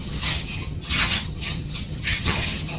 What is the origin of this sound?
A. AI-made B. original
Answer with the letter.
A